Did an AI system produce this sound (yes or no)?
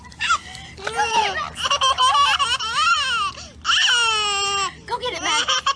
no